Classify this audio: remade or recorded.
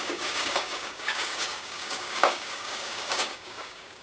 remade